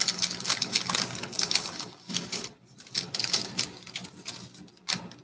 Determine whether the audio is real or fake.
real